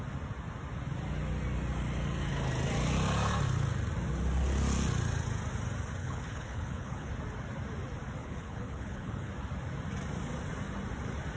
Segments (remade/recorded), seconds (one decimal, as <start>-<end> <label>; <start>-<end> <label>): 0.0-6.0 recorded; 6.0-7.1 remade; 7.1-8.2 recorded; 8.2-9.3 remade; 9.3-11.4 recorded